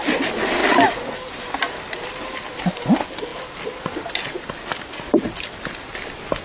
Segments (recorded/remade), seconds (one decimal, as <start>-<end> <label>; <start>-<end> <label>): 0.0-6.4 recorded